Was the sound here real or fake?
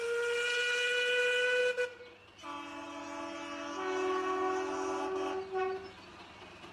real